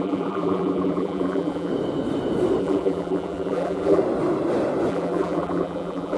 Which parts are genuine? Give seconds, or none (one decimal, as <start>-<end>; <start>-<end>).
1.7-2.6; 4.0-4.9